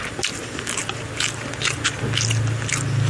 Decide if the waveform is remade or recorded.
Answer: recorded